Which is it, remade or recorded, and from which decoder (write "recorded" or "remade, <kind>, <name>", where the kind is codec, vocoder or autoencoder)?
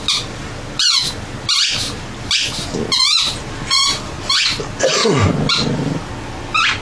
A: recorded